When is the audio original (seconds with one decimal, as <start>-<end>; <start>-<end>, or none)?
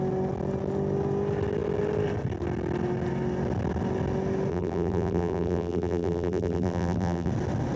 0.0-4.5; 7.3-7.8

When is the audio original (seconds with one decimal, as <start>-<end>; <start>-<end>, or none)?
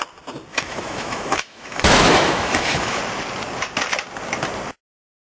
0.0-0.5; 3.0-5.2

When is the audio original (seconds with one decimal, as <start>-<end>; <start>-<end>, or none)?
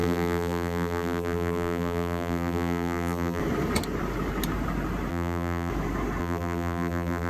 3.4-5.1; 5.7-6.2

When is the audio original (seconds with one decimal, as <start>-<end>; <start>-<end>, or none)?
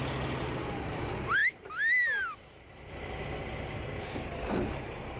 0.0-5.2